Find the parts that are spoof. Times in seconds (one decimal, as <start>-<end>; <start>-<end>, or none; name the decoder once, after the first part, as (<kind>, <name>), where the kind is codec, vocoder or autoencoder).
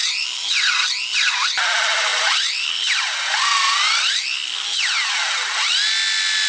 none